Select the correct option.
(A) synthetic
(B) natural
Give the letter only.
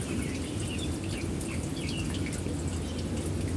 B